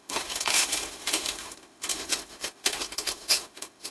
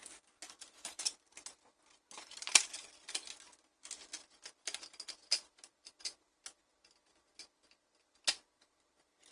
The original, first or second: second